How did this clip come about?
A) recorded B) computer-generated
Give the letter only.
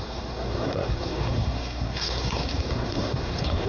B